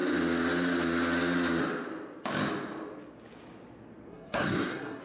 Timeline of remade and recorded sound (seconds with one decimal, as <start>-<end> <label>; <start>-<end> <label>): 0.0-4.1 recorded; 4.1-5.0 remade